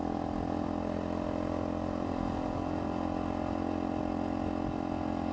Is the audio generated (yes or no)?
no